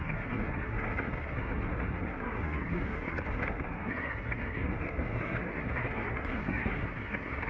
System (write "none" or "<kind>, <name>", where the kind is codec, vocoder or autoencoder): codec, SNAC